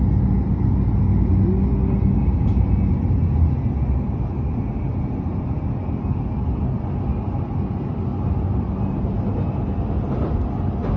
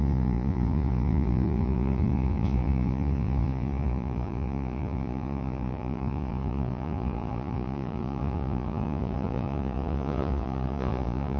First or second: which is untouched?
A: first